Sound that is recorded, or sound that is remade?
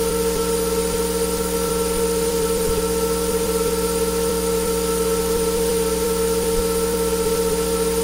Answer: remade